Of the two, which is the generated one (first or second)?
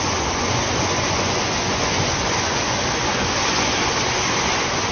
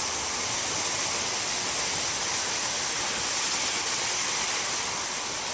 first